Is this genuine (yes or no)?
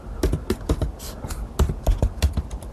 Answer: yes